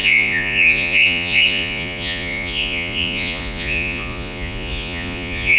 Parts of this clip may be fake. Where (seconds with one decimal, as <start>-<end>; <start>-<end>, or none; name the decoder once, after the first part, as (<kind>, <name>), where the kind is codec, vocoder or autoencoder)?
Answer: 0.0-5.6 (vocoder, Vocos)